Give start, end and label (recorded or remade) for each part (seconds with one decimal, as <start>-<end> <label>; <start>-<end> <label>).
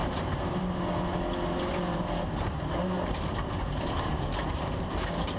0.0-0.8 remade; 0.8-1.7 recorded; 1.7-4.9 remade; 4.9-5.4 recorded